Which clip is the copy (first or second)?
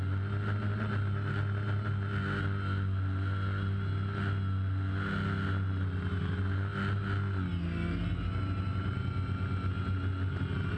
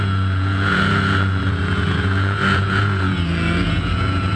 second